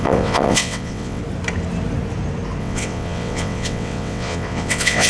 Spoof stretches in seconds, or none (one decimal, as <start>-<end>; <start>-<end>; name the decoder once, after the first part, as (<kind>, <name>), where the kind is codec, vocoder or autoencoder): 0.0-1.2 (vocoder, WaveNeXt); 2.6-5.1